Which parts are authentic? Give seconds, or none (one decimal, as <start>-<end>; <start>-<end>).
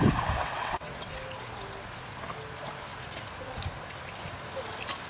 0.0-0.4; 1.1-5.1